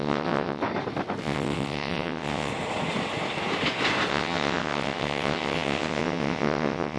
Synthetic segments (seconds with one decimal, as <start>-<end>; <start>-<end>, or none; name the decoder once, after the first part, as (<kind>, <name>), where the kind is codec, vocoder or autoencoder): 0.0-0.6 (vocoder, WaveNeXt); 1.2-2.5; 4.1-7.0